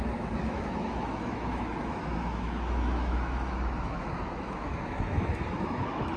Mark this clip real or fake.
fake